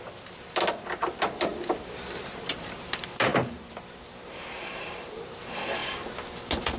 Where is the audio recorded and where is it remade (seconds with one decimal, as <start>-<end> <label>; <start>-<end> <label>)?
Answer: 0.0-5.8 remade; 5.8-6.8 recorded